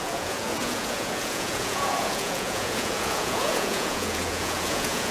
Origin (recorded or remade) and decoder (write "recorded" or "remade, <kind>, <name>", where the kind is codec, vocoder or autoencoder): remade, vocoder, Vocos